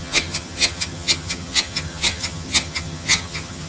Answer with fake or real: fake